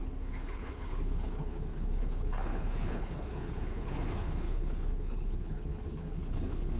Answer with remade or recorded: remade